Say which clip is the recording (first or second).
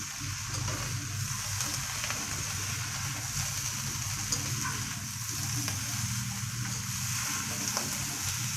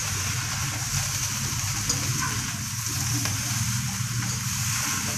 first